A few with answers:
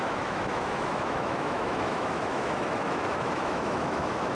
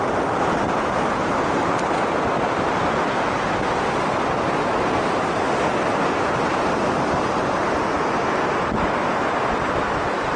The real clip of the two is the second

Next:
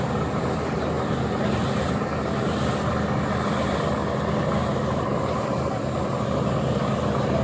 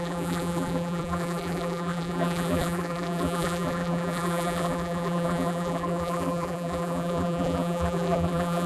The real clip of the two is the first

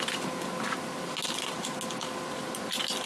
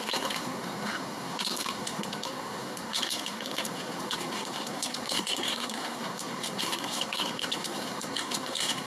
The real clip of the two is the first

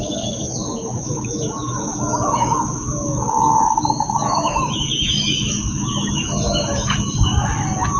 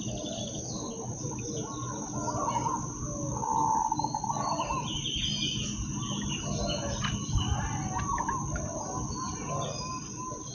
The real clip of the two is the second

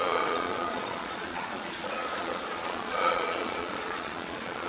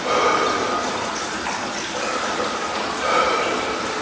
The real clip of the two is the second